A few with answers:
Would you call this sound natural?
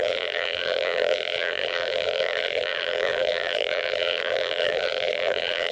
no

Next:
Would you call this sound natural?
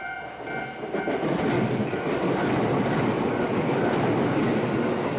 yes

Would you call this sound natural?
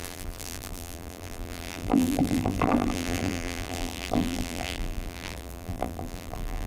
no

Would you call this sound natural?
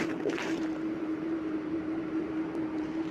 no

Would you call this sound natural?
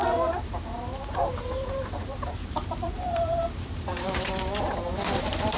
no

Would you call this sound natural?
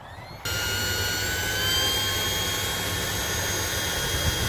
yes